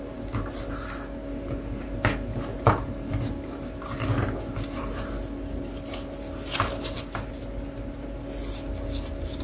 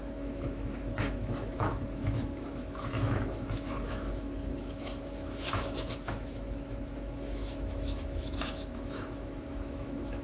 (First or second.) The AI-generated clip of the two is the second